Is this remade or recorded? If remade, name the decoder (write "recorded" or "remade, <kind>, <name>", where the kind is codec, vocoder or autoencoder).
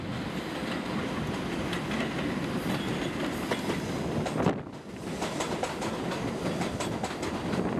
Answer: recorded